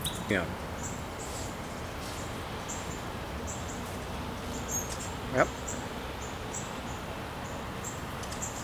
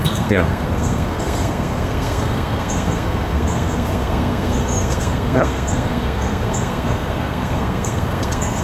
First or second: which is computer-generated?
second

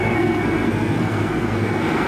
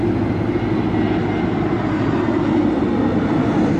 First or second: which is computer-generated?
first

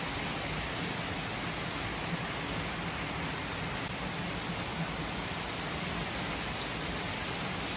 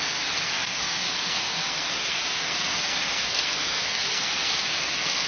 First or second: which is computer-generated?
second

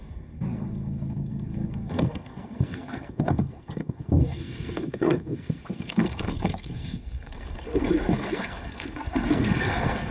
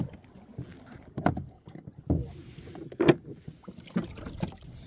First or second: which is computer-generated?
first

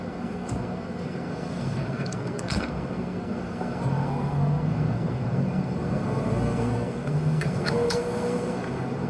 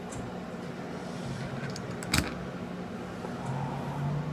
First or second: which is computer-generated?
first